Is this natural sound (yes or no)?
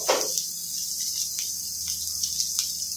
yes